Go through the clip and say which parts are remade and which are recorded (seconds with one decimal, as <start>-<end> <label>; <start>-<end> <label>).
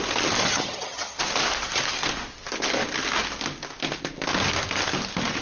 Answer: 0.0-0.4 recorded; 0.4-1.2 remade; 1.2-5.4 recorded